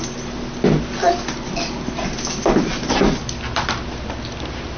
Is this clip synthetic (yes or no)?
no